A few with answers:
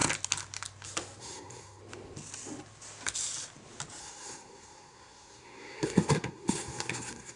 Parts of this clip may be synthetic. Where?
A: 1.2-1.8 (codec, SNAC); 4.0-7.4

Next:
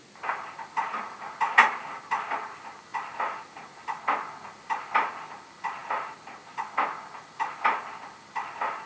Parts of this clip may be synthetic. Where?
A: none

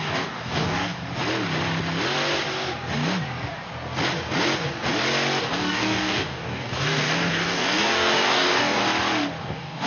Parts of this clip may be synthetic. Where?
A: 0.0-1.0 (codec, DAC); 5.4-8.8; 9.4-9.9

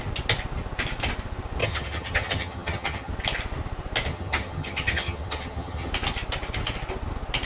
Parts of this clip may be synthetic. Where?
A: 1.6-3.1 (vocoder, HiFi-GAN); 4.1-5.9